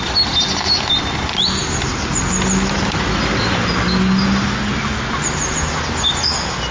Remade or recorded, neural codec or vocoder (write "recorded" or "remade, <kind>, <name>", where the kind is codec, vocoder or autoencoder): recorded